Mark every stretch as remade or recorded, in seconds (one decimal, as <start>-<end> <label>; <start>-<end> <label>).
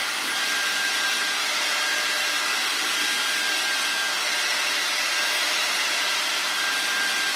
0.0-5.2 recorded; 5.2-6.6 remade; 6.6-7.4 recorded